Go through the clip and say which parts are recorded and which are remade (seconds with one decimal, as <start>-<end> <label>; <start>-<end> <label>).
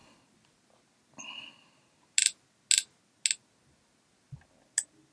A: 0.0-5.1 recorded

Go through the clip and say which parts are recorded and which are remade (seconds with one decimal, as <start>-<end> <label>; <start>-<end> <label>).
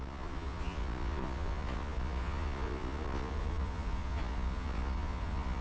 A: 0.0-5.6 remade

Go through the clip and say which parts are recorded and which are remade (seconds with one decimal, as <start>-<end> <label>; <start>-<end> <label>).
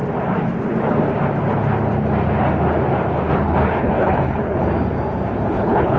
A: 0.0-3.3 recorded; 3.3-4.6 remade; 4.6-5.5 recorded; 5.5-6.0 remade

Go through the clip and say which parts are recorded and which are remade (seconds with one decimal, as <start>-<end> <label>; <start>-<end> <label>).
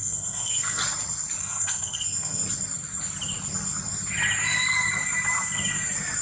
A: 0.0-0.8 remade; 0.8-1.4 recorded; 1.4-2.4 remade; 2.4-6.2 recorded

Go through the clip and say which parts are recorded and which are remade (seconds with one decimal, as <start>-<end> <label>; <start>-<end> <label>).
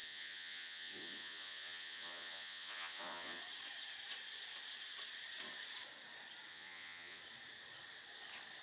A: 0.0-3.4 remade; 3.4-6.5 recorded; 6.5-7.2 remade; 7.2-8.6 recorded